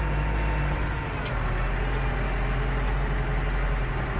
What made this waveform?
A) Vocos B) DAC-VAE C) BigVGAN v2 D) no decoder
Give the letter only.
D